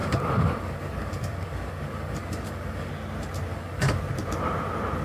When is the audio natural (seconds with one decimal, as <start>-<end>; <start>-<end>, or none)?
2.9-3.5; 4.0-5.0